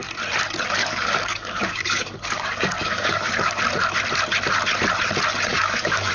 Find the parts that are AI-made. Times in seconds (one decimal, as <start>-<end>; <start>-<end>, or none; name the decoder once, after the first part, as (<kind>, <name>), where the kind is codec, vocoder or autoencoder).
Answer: 0.8-3.3 (codec, DAC); 5.5-6.1

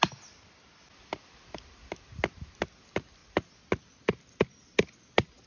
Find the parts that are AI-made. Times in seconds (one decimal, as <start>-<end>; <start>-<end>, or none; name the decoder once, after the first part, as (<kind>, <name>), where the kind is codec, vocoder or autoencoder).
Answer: none

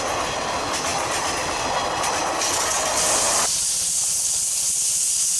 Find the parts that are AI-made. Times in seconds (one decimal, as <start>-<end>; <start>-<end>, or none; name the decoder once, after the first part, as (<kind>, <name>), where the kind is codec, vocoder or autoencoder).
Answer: none

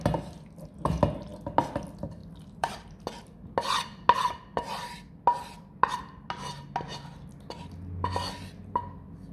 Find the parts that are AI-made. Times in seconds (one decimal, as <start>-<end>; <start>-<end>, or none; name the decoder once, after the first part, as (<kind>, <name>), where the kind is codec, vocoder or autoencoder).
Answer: 2.2-2.8 (vocoder, BigVGAN v2)

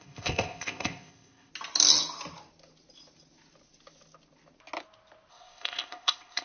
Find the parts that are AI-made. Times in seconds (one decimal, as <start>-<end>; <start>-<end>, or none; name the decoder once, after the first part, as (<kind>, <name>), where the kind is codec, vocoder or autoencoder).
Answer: 0.0-1.5 (codec, ZipCodec); 5.3-6.4